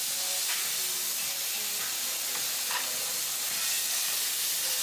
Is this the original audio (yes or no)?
yes